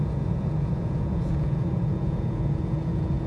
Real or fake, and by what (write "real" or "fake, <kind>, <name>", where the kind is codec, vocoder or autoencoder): fake, vocoder, Vocos